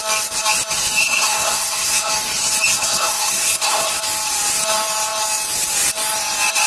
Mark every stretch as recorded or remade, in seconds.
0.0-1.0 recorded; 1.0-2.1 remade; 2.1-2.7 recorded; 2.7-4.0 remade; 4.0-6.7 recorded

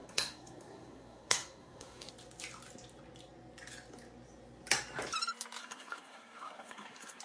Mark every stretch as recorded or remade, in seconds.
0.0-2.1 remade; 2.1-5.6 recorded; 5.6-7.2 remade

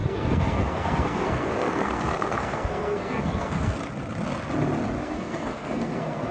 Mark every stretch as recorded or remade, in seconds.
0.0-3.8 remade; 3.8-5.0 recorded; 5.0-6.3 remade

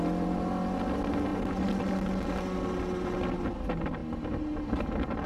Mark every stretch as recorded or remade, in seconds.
0.0-5.3 recorded